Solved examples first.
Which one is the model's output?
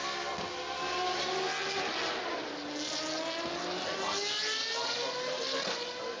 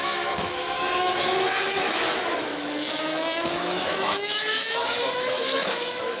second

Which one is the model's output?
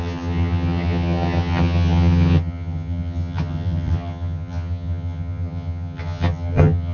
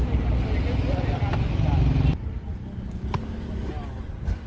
first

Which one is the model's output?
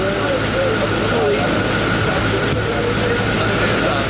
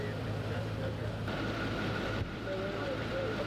second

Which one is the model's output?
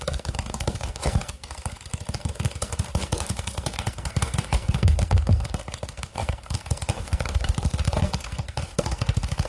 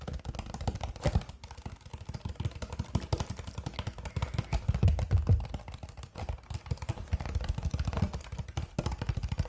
first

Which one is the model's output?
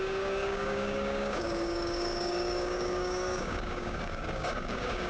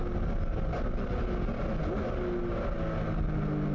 first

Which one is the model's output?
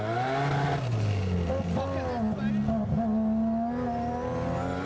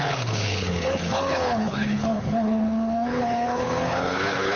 second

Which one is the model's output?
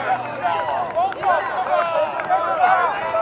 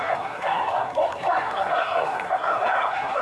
second